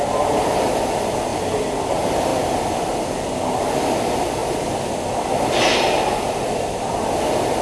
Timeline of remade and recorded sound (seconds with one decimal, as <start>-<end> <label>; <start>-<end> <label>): 0.0-7.6 recorded